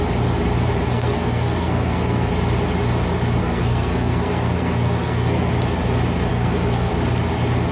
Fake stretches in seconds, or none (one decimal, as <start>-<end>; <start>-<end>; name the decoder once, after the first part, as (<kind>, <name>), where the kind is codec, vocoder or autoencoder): 0.9-2.3 (codec, SNAC); 3.4-5.5; 6.3-6.9

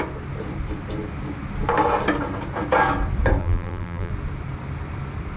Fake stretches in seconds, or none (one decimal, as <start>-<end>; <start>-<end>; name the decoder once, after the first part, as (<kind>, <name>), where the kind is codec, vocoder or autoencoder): 3.4-4.1 (vocoder, BigVGAN v2)

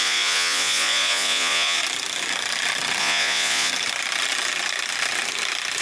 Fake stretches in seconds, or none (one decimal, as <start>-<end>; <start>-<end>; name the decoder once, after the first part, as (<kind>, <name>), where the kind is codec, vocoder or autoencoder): 0.0-1.8 (vocoder, Vocos); 3.0-3.7

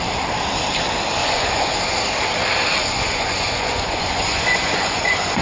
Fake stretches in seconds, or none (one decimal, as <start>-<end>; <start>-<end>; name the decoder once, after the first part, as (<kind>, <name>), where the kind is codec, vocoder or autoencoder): 1.2-1.7 (vocoder, Vocos); 2.8-5.4

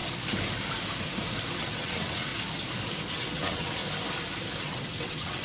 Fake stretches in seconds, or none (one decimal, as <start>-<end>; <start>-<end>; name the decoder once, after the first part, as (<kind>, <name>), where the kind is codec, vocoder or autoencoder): 1.6-2.3 (vocoder, WaveNeXt); 3.1-3.8; 4.6-5.4